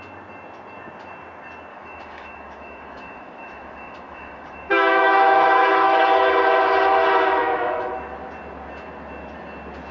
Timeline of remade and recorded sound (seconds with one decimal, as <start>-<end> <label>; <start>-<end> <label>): 0.0-1.7 recorded; 1.7-6.0 remade; 6.0-7.4 recorded; 7.4-7.9 remade; 7.9-9.9 recorded